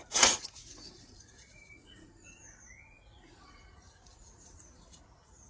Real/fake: fake